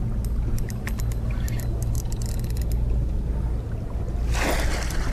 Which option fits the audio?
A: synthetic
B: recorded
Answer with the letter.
B